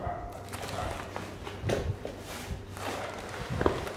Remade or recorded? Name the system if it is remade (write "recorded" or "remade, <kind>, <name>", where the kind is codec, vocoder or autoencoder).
recorded